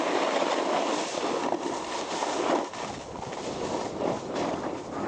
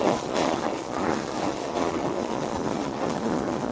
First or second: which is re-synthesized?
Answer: second